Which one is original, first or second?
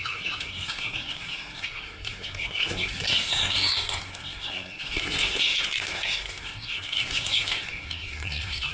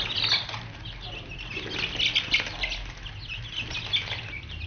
second